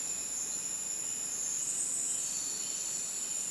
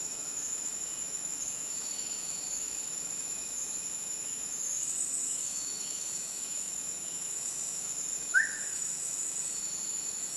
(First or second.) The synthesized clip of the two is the second